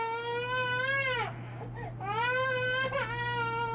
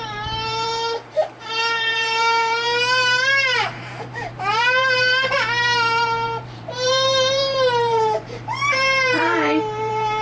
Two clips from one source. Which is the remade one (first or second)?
second